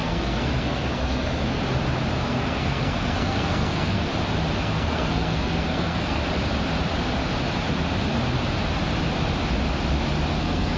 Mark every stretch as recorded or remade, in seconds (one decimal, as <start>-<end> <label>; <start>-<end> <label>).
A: 0.0-1.6 remade; 1.6-2.2 recorded; 2.2-4.1 remade; 4.1-4.6 recorded; 4.6-6.2 remade; 6.2-10.3 recorded; 10.3-10.8 remade